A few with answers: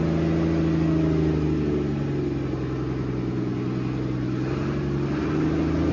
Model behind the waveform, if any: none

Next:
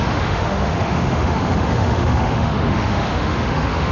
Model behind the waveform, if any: autoencoder, DAC-VAE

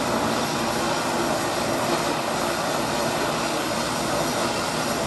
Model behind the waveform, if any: none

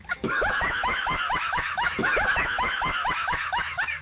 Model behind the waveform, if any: autoencoder, DAC-VAE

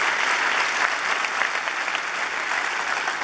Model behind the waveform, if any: none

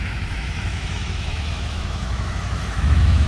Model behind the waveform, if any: autoencoder, DAC-VAE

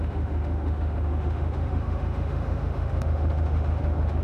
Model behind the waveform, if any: autoencoder, DAC-VAE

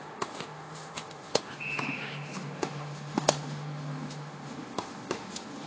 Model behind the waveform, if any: autoencoder, DAC-VAE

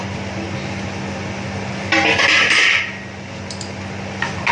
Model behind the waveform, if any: none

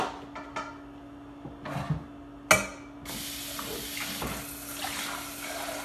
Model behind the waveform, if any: none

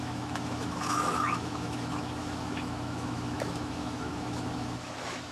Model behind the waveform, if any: autoencoder, DAC-VAE